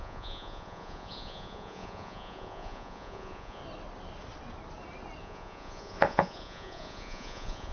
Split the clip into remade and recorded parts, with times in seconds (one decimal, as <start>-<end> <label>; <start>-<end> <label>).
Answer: 0.0-3.6 remade; 3.6-5.2 recorded; 5.2-7.7 remade